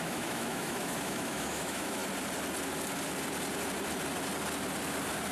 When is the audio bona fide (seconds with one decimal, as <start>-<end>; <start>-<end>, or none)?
2.0-5.3